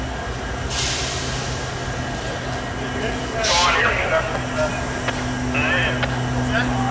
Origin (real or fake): real